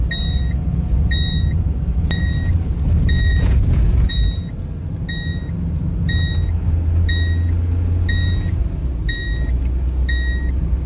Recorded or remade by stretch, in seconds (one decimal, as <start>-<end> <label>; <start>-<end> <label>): 0.0-3.3 recorded; 3.3-4.1 remade; 4.1-10.9 recorded